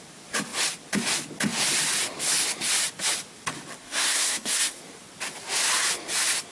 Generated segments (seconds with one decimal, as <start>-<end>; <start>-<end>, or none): 3.8-4.8